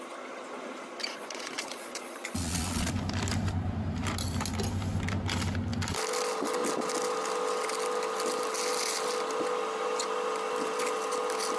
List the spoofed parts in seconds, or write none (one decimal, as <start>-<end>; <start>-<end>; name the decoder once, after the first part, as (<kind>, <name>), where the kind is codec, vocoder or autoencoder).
1.0-2.9 (vocoder, Vocos)